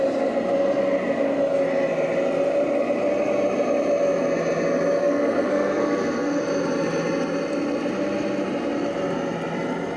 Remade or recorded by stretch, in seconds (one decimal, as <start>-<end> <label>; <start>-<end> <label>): 0.0-5.0 recorded; 5.0-6.4 remade; 6.4-10.0 recorded